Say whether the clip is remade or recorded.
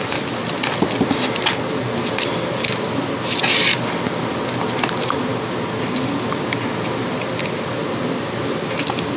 recorded